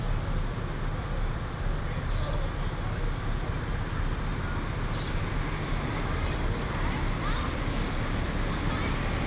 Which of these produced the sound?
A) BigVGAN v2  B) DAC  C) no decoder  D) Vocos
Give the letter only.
C